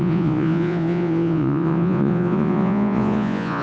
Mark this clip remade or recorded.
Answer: remade